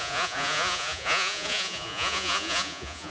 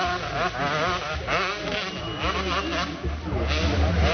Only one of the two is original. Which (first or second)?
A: second